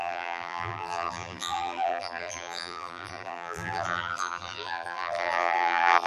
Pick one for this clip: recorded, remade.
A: remade